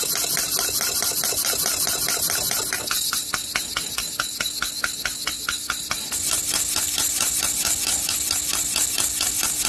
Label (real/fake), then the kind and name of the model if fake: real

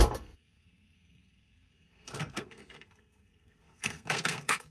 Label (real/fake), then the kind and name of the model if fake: fake, codec, SNAC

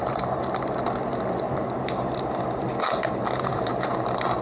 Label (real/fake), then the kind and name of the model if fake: real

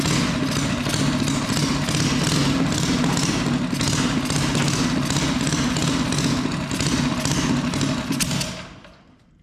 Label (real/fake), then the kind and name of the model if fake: real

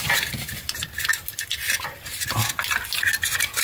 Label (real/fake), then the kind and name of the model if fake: real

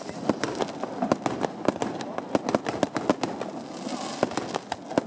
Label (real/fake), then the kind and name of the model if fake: real